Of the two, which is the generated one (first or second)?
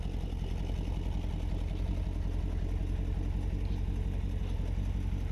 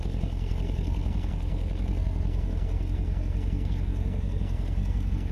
second